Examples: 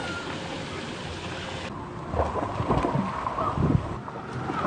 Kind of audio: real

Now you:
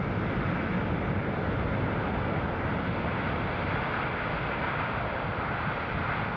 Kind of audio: real